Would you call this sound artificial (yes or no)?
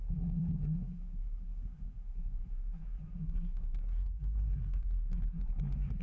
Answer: yes